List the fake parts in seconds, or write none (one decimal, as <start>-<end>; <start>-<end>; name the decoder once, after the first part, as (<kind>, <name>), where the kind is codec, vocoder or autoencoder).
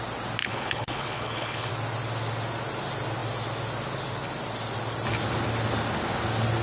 0.4-1.7 (codec, HILCodec)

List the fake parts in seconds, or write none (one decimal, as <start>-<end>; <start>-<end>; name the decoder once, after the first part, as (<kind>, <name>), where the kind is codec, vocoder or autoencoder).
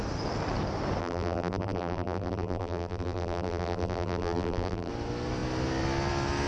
1.0-4.9 (vocoder, BigVGAN v2)